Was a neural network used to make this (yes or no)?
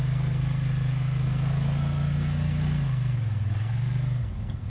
yes